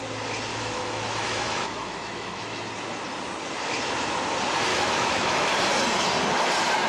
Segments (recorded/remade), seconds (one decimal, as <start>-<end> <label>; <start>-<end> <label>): 0.0-0.5 recorded; 0.5-2.6 remade; 2.6-4.7 recorded; 4.7-5.5 remade; 5.5-6.9 recorded